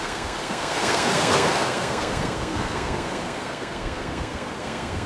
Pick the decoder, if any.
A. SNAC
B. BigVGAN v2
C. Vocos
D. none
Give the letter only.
A